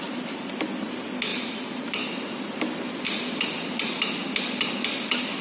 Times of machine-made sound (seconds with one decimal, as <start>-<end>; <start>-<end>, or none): 1.3-2.4

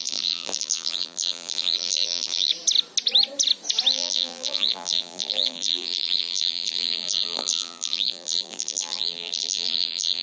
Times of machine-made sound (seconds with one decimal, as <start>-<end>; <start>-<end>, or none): 0.0-2.5; 3.9-10.2

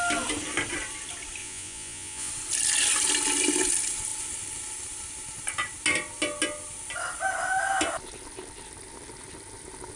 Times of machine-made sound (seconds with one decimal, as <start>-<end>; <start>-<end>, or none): 1.4-2.3

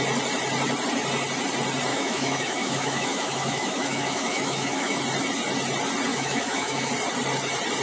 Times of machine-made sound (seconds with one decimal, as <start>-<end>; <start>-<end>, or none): 1.9-5.0; 6.1-6.9

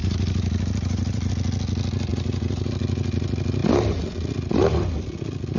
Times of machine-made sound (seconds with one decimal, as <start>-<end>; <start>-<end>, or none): 0.0-1.3; 2.1-2.7

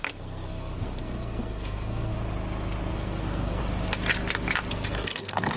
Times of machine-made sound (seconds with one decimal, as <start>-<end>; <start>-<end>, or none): 0.0-2.1; 2.9-3.6; 4.7-5.6

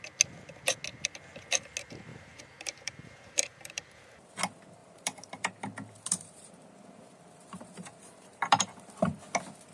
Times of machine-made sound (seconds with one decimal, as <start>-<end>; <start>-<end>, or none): 2.1-4.3; 4.8-8.9

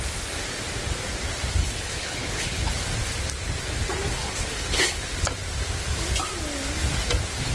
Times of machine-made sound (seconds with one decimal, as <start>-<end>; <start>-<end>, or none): 1.6-2.7; 4.2-5.0